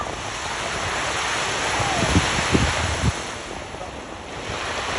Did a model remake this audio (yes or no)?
no